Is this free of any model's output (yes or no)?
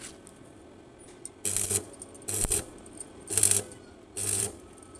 yes